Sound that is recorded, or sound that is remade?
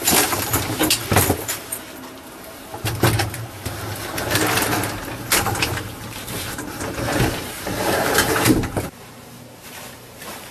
remade